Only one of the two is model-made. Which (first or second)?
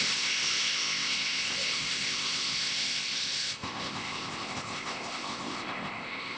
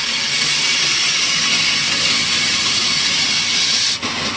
first